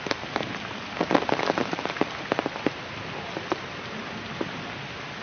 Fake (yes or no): no